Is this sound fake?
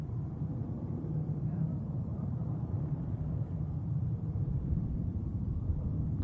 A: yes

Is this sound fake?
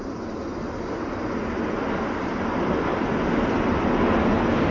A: no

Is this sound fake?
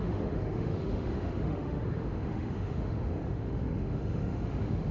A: yes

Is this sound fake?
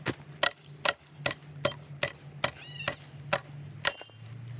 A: no